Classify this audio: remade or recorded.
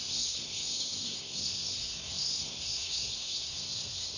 remade